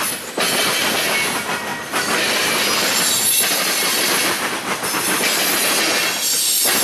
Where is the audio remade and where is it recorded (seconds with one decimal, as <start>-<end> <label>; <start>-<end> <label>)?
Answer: 0.0-6.8 recorded